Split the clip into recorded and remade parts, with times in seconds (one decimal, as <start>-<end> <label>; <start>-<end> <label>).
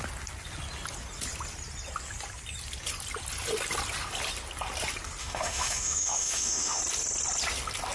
0.0-5.2 recorded; 5.2-6.8 remade; 6.8-7.9 recorded